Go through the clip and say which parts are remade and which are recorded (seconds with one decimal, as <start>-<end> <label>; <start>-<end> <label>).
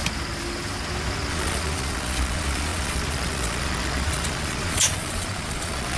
0.0-1.3 recorded; 1.3-6.0 remade